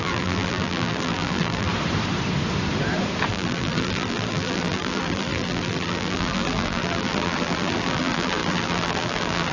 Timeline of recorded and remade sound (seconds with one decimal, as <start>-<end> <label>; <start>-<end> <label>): 0.0-1.7 remade; 1.7-3.3 recorded; 3.3-9.5 remade